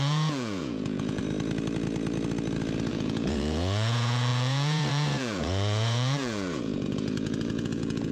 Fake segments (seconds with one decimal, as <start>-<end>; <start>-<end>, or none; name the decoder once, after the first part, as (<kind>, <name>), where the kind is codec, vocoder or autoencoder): 0.0-1.2 (vocoder, Vocos); 2.9-8.1